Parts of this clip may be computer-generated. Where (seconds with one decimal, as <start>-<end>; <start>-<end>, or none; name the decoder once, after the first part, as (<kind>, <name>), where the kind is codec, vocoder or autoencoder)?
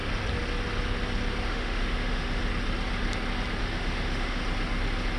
1.5-2.4 (autoencoder, DAC-VAE); 3.6-4.4